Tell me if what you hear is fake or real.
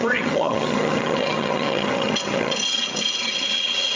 fake